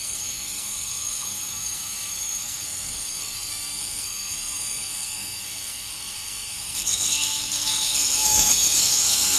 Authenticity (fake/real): fake